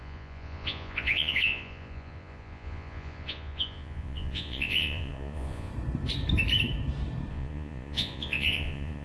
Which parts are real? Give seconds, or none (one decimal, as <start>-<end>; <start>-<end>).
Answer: 5.7-7.3